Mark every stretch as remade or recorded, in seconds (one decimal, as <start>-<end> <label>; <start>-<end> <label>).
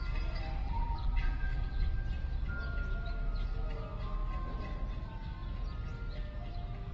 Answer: 0.0-0.6 recorded; 0.6-1.8 remade; 1.8-6.9 recorded